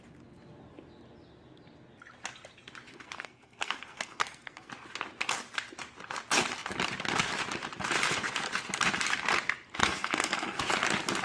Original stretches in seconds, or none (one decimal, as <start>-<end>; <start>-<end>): 0.0-2.9; 4.7-9.8; 10.6-11.2